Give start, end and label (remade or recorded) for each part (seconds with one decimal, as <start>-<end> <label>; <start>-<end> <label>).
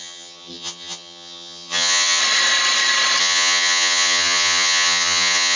0.0-2.2 remade; 2.2-3.2 recorded; 3.2-5.6 remade